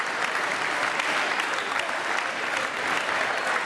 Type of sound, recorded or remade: recorded